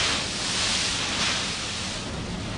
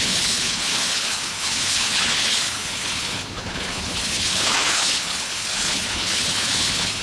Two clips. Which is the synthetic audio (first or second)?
second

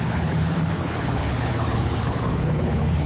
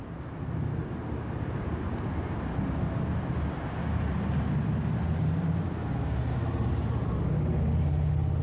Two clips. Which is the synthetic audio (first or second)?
first